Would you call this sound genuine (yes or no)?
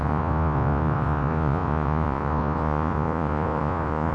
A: no